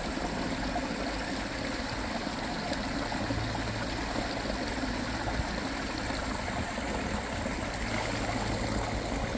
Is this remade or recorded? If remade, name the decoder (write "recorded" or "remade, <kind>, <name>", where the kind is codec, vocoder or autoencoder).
recorded